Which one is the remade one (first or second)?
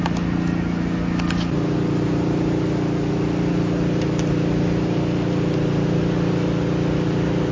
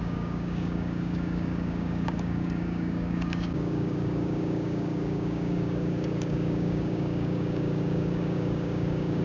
second